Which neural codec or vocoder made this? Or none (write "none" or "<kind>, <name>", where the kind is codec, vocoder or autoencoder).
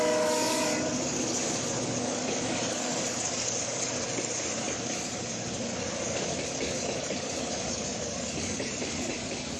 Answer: codec, DAC